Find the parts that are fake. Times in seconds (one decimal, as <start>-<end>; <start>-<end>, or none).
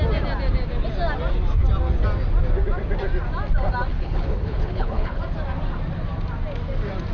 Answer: 3.9-5.2